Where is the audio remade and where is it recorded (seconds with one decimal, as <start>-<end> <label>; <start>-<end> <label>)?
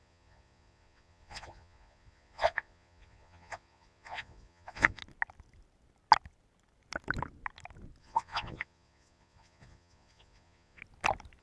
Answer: 0.0-5.0 remade; 5.0-8.0 recorded; 8.0-10.8 remade; 10.8-11.4 recorded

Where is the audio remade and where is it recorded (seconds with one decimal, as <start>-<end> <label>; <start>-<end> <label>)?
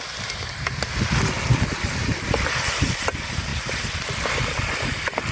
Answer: 0.0-5.3 recorded